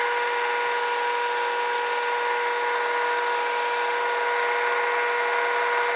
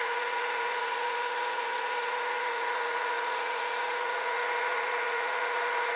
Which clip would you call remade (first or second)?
second